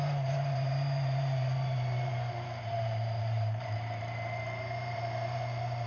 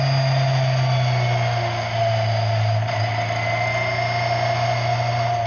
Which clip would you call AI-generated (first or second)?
first